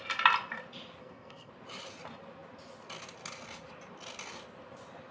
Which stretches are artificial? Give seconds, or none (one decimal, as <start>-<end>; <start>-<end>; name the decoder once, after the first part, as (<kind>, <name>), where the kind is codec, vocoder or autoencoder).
1.0-1.5 (codec, SNAC)